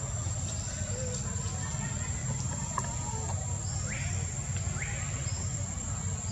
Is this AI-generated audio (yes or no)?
no